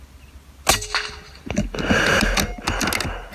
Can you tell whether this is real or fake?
real